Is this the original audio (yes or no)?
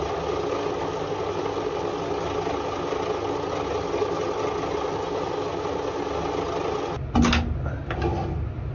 yes